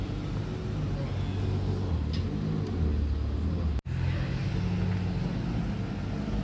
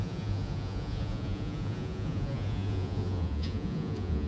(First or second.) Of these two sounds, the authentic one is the first